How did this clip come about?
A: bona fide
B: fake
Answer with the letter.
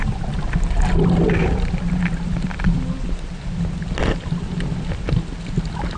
A